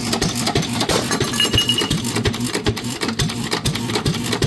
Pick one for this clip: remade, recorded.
recorded